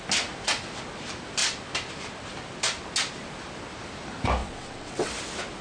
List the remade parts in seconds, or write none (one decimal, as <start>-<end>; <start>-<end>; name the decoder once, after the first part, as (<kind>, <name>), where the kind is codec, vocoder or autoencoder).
4.4-5.1 (vocoder, WaveNeXt)